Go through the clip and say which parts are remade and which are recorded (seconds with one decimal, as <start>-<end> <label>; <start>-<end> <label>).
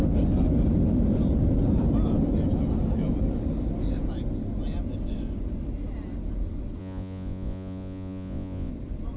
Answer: 0.0-6.8 recorded; 6.8-8.7 remade; 8.7-9.2 recorded